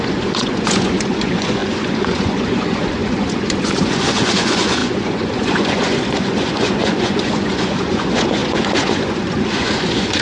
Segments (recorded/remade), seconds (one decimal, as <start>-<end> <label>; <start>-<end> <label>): 0.0-10.2 remade